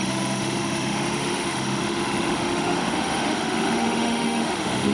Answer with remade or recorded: remade